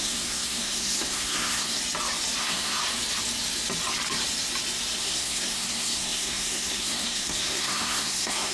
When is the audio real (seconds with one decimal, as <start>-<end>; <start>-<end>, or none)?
1.8-2.4; 2.8-5.0